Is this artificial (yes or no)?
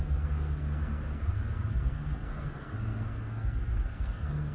yes